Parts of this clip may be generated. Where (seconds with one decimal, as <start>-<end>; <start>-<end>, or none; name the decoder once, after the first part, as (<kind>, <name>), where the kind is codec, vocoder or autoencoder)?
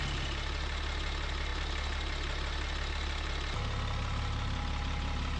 none